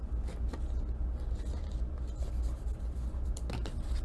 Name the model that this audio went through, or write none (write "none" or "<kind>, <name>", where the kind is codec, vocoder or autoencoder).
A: none